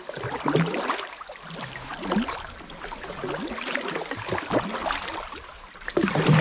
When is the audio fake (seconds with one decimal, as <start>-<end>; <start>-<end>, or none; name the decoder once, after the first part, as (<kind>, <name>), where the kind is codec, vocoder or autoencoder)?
none